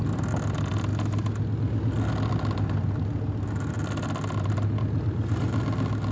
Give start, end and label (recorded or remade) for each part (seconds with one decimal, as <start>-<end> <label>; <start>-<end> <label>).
0.0-6.1 recorded